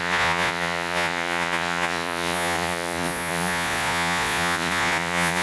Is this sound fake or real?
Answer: fake